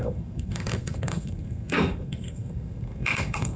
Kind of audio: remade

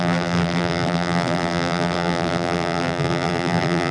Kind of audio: remade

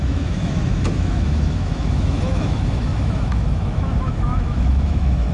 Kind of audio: remade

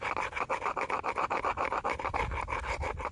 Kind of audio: recorded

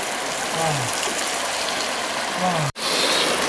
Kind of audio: recorded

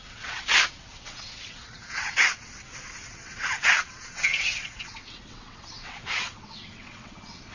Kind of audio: remade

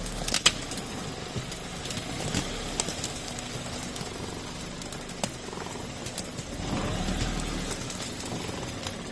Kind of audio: recorded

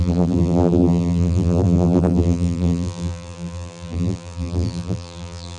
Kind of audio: remade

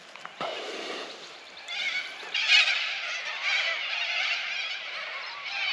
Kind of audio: recorded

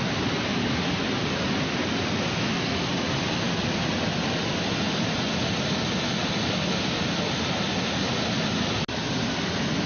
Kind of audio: recorded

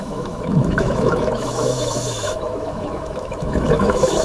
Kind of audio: remade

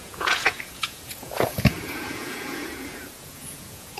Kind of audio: remade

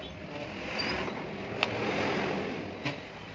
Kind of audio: recorded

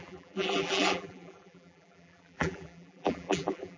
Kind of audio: remade